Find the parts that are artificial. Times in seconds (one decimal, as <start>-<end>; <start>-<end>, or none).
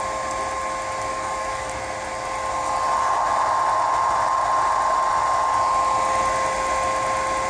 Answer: 1.1-1.7